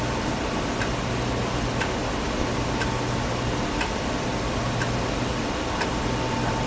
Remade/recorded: recorded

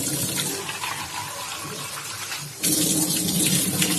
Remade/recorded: recorded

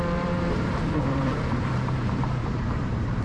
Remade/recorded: remade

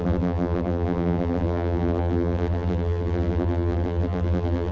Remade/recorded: remade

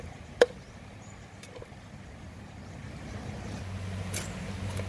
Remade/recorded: recorded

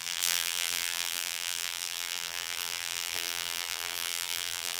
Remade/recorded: remade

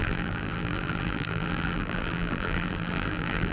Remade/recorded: remade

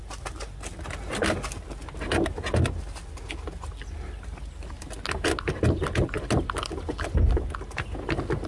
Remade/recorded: recorded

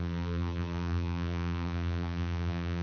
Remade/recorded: remade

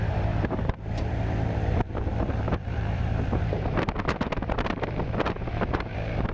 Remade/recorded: remade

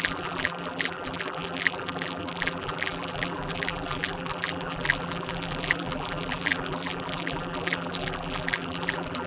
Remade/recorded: remade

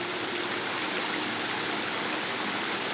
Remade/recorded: remade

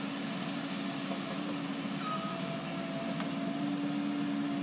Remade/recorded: recorded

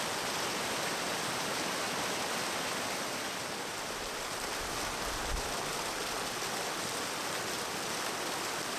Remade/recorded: recorded